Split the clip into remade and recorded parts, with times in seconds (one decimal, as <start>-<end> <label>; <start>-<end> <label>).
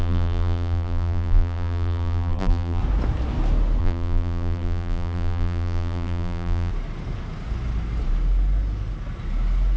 0.0-2.8 remade; 2.8-3.8 recorded; 3.8-6.7 remade; 6.7-9.8 recorded